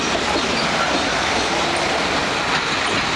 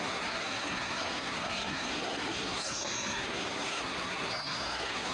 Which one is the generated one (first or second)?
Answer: second